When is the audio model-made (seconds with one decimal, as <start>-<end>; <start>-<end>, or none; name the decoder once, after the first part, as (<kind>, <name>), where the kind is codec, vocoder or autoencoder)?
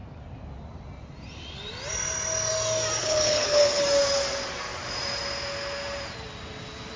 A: 3.0-3.8 (codec, HILCodec)